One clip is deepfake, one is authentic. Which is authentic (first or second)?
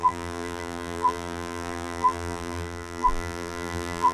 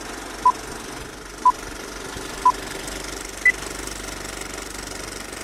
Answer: second